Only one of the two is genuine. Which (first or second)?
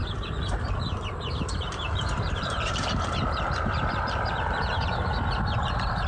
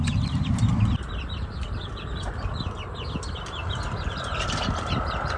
second